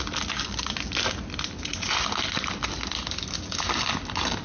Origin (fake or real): real